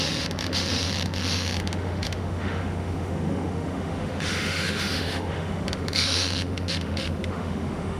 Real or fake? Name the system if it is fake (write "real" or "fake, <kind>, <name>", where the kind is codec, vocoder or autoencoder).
fake, autoencoder, DAC-VAE